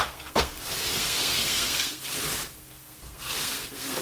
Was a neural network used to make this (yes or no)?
yes